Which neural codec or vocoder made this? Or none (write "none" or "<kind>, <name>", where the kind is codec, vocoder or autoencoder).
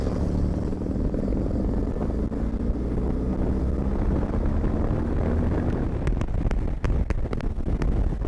none